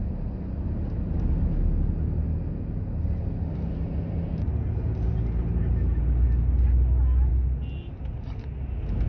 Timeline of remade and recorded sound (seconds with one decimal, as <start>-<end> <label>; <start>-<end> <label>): 0.0-9.1 recorded